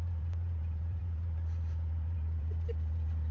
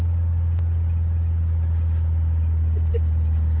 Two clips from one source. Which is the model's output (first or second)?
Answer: first